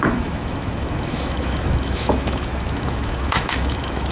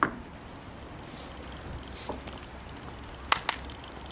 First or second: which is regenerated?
first